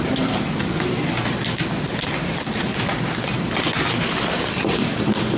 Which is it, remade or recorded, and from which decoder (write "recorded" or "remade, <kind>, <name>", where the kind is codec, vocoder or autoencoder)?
recorded